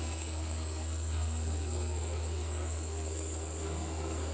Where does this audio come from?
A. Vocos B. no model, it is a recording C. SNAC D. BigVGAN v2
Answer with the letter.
C